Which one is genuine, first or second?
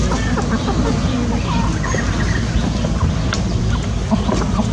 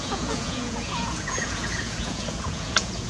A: first